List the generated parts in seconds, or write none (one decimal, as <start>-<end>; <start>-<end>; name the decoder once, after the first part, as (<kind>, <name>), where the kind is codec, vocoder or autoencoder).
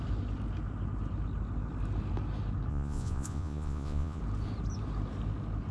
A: 2.7-4.2 (vocoder, Vocos)